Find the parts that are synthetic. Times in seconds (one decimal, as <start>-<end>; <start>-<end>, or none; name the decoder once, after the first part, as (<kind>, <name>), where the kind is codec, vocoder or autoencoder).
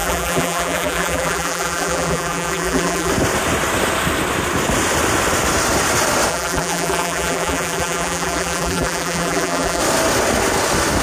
0.0-3.1 (vocoder, BigVGAN v2); 6.3-9.8